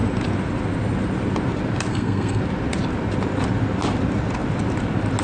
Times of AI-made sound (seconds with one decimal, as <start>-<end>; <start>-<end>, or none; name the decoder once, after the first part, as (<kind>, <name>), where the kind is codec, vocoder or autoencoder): 1.9-2.4 (codec, SNAC)